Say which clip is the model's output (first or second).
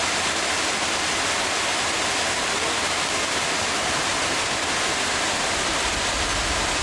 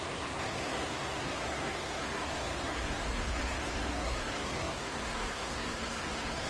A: second